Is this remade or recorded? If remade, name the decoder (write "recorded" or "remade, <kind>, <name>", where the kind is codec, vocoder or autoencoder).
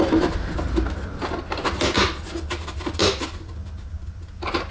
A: recorded